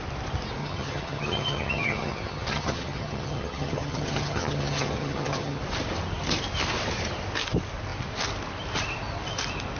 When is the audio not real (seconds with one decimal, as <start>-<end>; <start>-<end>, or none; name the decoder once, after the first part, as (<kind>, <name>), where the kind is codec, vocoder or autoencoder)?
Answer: 0.6-5.6 (vocoder, HiFi-GAN)